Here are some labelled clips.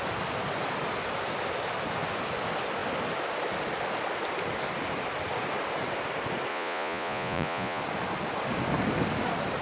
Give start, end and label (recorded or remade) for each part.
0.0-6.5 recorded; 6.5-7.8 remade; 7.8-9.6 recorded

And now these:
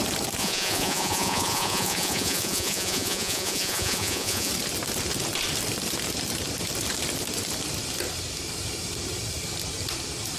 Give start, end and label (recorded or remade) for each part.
0.0-0.4 recorded; 0.4-4.5 remade; 4.5-10.4 recorded